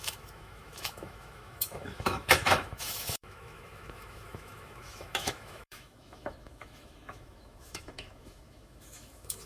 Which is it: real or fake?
fake